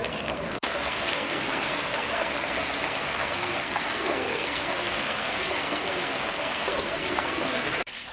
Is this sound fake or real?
fake